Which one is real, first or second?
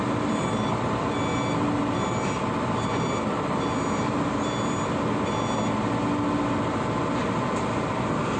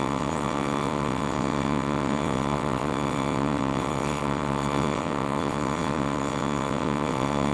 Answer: first